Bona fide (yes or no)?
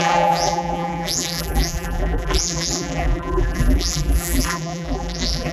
no